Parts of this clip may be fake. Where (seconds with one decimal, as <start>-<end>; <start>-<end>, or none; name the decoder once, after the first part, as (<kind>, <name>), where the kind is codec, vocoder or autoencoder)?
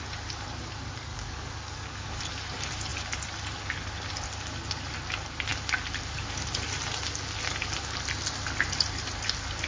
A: 1.1-2.2 (codec, DAC)